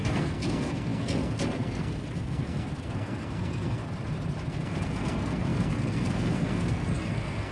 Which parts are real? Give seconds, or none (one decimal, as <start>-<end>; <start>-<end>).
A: 3.8-4.5